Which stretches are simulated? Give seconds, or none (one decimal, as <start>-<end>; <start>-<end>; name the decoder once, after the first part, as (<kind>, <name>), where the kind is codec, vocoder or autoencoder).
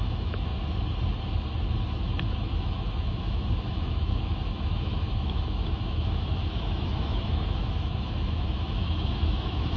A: 0.0-0.5 (autoencoder, DAC-VAE); 2.2-9.8